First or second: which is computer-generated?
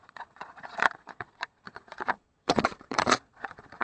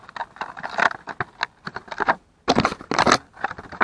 first